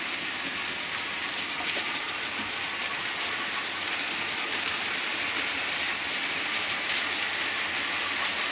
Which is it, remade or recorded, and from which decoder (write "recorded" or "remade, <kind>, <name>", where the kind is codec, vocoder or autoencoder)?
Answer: recorded